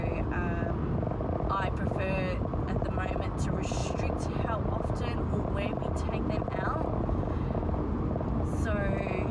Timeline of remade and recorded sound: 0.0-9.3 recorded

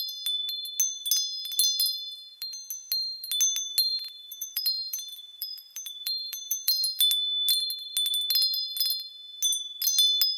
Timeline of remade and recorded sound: 0.0-3.9 recorded; 3.9-7.0 remade; 7.0-10.4 recorded

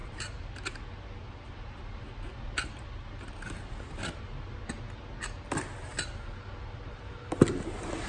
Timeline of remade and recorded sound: 0.0-0.5 remade; 0.5-8.1 recorded

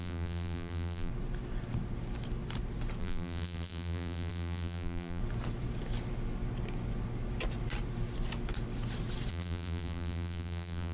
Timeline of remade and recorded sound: 0.0-1.1 remade; 1.1-3.0 recorded; 3.0-5.2 remade; 5.2-9.3 recorded; 9.3-10.9 remade

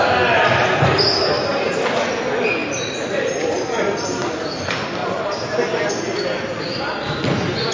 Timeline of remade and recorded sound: 0.0-2.6 recorded; 2.6-3.3 remade; 3.3-5.0 recorded; 5.0-5.9 remade; 5.9-7.7 recorded